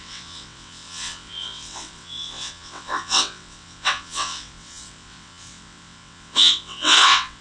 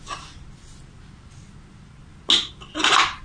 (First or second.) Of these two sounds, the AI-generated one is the first